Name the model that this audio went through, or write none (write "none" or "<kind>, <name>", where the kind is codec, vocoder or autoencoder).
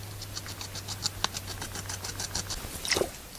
none